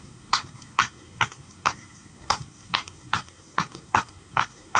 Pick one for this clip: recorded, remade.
remade